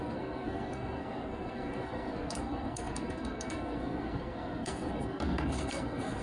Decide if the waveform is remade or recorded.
remade